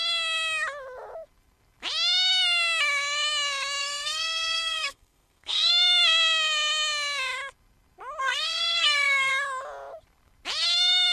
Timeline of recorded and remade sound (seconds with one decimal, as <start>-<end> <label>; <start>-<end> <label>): 0.0-3.8 recorded; 3.8-5.7 remade; 5.7-8.2 recorded; 8.2-9.3 remade; 9.3-11.1 recorded